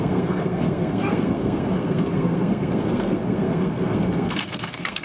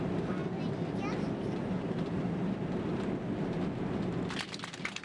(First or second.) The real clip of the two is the second